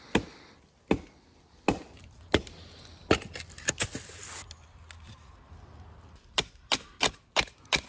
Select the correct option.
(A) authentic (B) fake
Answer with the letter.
A